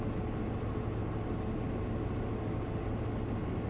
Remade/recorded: recorded